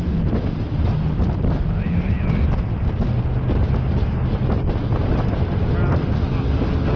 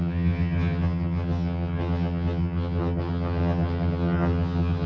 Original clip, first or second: first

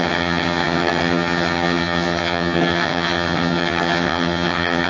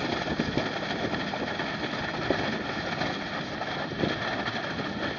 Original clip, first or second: second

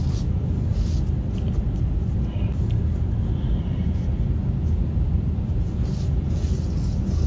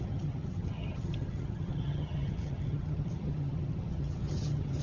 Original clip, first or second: first